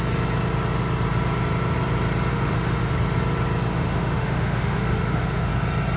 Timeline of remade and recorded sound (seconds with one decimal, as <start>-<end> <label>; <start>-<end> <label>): 0.0-2.3 recorded; 2.3-2.9 remade; 2.9-3.7 recorded; 3.7-5.5 remade; 5.5-6.0 recorded